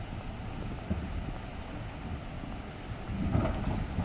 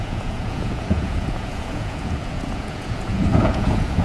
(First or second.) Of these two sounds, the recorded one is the first